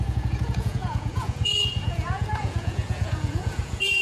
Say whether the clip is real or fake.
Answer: fake